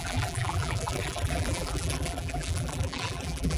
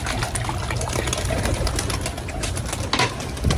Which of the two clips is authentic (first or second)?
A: second